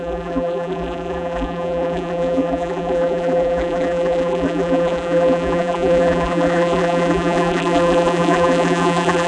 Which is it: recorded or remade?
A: remade